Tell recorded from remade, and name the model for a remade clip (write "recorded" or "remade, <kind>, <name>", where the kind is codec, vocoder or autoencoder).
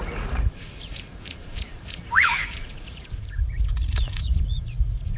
remade, vocoder, Vocos